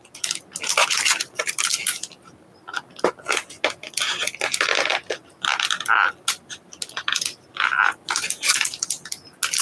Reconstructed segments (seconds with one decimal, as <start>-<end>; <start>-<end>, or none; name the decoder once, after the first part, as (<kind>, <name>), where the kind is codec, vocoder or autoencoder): none